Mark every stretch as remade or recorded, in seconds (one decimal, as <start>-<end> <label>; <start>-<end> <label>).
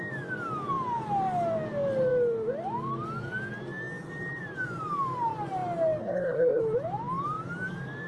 0.0-6.0 recorded; 6.0-6.6 remade; 6.6-8.1 recorded